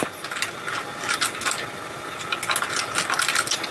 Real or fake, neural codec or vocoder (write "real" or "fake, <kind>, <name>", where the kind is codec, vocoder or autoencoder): real